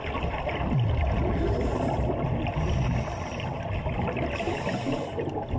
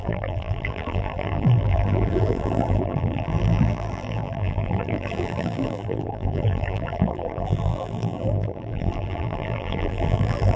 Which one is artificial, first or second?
second